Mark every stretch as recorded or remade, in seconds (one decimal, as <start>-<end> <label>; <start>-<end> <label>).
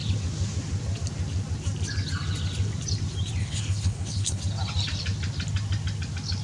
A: 0.0-3.4 recorded; 3.4-4.4 remade; 4.4-6.4 recorded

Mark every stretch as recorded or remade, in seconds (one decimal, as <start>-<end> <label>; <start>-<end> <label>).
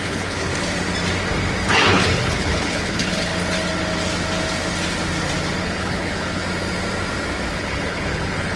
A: 0.0-0.5 remade; 0.5-1.7 recorded; 1.7-3.3 remade; 3.3-5.6 recorded; 5.6-6.4 remade; 6.4-7.5 recorded; 7.5-8.6 remade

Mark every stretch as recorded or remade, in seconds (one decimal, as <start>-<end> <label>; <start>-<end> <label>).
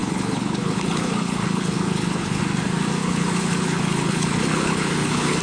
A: 0.0-2.4 remade; 2.4-3.0 recorded; 3.0-5.4 remade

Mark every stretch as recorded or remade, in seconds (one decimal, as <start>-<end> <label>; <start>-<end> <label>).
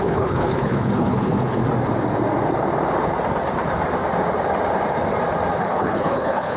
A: 0.0-1.6 remade; 1.6-5.6 recorded; 5.6-6.6 remade